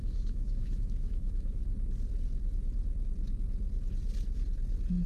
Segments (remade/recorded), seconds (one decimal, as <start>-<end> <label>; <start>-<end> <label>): 0.0-1.6 remade; 1.6-5.1 recorded